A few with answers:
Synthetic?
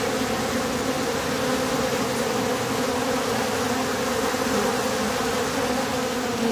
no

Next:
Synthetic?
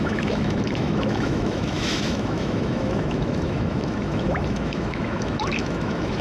yes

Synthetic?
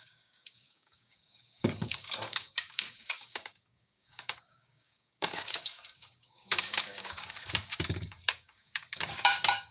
yes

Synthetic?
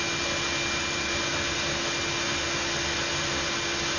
no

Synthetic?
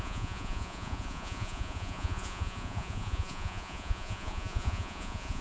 yes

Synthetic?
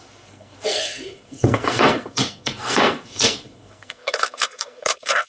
yes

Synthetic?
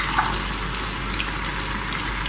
no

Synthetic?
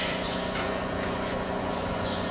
yes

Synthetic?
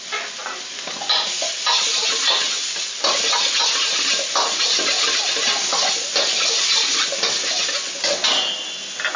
no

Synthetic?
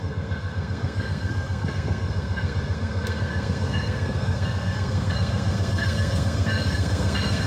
yes